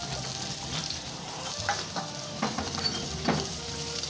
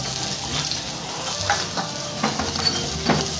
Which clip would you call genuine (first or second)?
second